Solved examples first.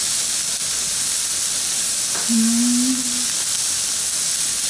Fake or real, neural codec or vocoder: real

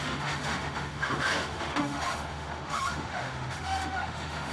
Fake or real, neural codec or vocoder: fake, autoencoder, DAC-VAE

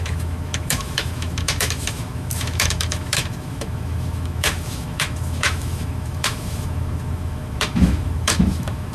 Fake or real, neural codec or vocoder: fake, autoencoder, DAC-VAE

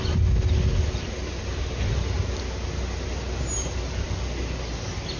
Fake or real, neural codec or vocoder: real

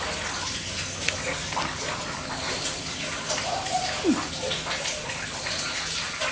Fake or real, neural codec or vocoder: real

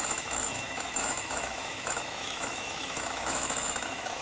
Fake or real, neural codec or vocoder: fake, autoencoder, DAC-VAE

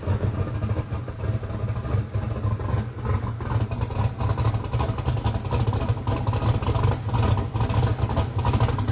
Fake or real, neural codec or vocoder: real